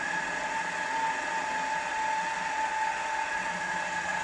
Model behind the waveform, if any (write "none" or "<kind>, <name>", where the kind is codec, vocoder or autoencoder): none